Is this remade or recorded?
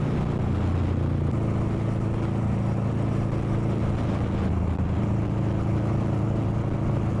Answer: recorded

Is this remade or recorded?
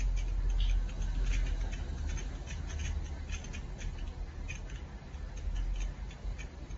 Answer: recorded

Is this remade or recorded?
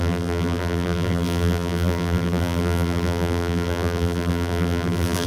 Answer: remade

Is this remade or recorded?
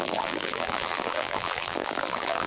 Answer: remade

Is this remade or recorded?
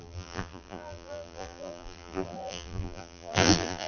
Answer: remade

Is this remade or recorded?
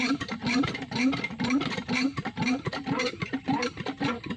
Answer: remade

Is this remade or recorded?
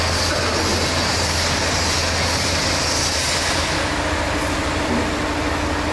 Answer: recorded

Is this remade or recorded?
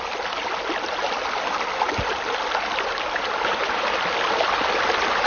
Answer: recorded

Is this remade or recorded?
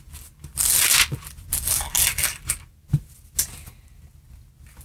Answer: recorded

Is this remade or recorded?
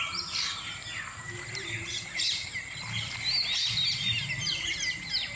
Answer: recorded